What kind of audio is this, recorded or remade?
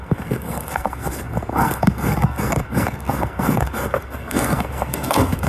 remade